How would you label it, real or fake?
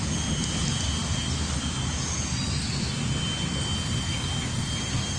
real